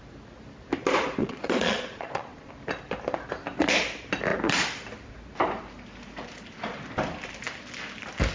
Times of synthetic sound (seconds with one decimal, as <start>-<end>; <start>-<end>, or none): 1.2-2.5